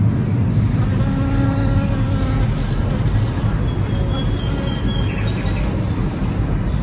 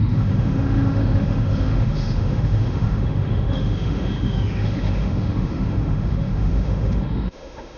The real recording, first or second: first